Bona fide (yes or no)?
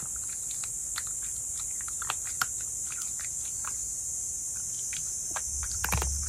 yes